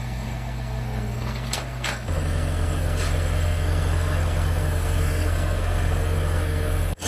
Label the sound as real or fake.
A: fake